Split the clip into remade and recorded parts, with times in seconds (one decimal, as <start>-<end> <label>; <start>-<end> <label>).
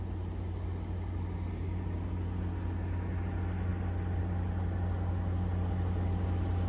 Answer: 0.0-6.7 recorded